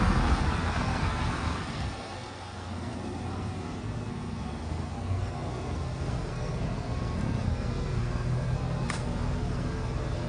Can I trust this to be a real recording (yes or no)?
no